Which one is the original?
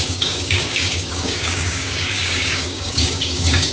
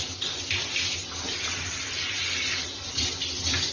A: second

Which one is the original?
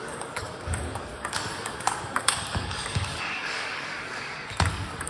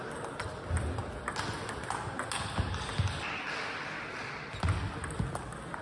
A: second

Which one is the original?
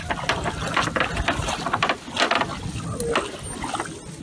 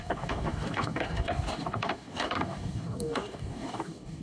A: first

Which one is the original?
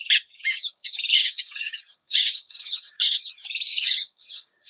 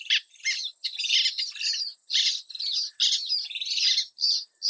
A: second